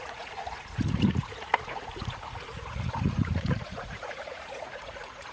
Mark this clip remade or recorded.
remade